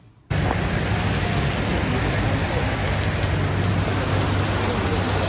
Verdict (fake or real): real